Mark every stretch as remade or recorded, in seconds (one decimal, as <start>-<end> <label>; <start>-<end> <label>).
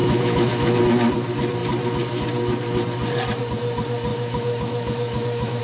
0.0-0.8 remade; 0.8-4.1 recorded; 4.1-5.6 remade